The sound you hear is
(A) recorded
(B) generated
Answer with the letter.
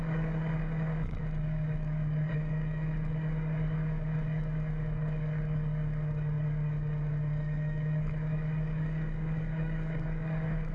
B